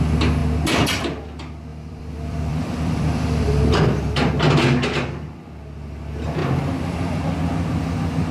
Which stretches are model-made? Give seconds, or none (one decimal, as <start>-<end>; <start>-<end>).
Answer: 1.7-3.6; 6.4-7.2